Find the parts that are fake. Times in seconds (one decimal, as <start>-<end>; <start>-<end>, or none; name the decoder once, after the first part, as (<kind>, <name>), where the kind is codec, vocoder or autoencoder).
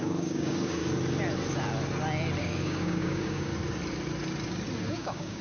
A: 0.0-0.8 (codec, DAC); 2.4-3.5; 4.9-5.4